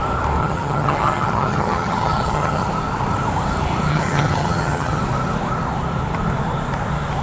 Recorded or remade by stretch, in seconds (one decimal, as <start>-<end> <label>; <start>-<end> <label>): 0.0-0.4 recorded; 0.4-2.7 remade; 2.7-3.9 recorded; 3.9-5.0 remade; 5.0-7.2 recorded